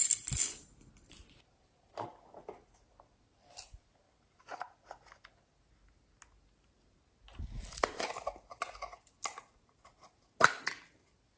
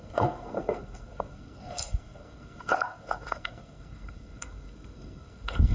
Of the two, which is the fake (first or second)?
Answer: second